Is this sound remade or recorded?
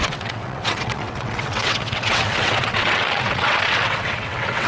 remade